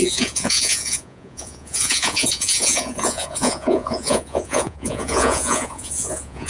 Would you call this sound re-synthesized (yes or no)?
yes